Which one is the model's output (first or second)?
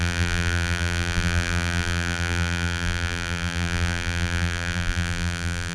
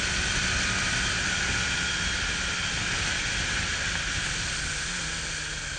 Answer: first